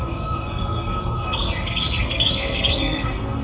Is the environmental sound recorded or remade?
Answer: remade